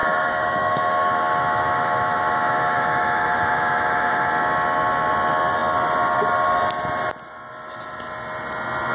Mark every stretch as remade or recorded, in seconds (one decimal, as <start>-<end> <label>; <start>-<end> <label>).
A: 0.0-4.3 remade; 4.3-8.9 recorded